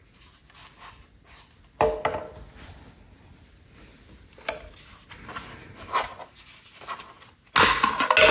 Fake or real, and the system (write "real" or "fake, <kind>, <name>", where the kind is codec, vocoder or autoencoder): real